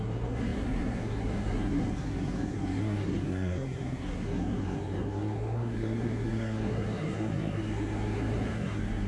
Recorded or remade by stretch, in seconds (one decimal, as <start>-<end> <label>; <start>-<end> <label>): 0.0-9.1 remade